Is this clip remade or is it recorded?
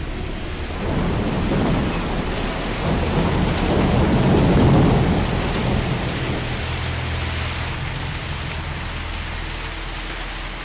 recorded